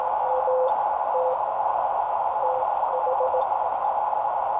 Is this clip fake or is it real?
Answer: real